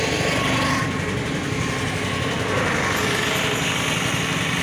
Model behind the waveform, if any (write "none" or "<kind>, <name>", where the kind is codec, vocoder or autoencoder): none